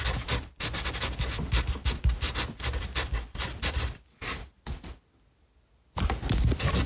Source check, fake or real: real